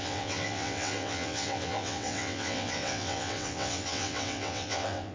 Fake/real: fake